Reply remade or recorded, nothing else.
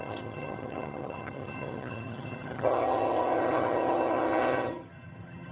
remade